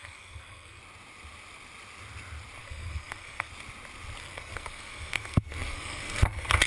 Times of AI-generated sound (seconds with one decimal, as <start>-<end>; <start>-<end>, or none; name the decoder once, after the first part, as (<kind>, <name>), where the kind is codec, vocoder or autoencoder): 0.0-0.8 (codec, SNAC); 2.6-3.5; 4.2-6.7